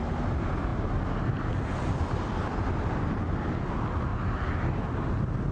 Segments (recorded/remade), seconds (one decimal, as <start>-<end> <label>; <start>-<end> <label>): 0.0-5.5 recorded